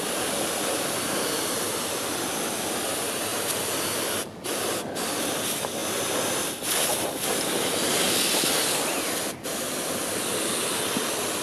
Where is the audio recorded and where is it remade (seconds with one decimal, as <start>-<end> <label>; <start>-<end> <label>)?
0.0-11.4 recorded